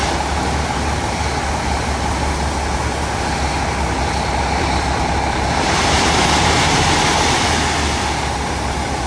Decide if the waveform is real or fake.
real